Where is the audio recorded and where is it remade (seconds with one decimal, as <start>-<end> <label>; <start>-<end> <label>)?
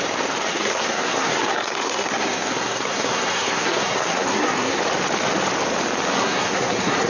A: 0.0-0.5 recorded; 0.5-4.8 remade; 4.8-6.2 recorded; 6.2-7.1 remade